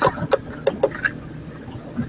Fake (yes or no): no